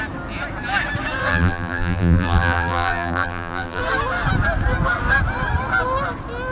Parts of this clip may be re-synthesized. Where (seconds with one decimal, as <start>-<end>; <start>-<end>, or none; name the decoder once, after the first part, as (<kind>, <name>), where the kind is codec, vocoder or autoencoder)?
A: 1.3-3.8 (vocoder, BigVGAN v2)